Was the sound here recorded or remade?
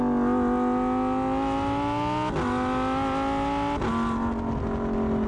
recorded